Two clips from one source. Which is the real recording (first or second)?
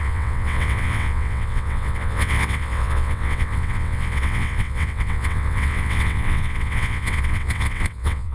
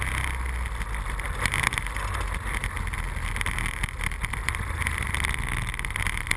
second